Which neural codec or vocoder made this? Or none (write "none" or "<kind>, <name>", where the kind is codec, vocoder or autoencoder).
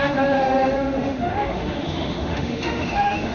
autoencoder, DAC-VAE